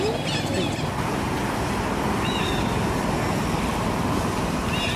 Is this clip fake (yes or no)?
no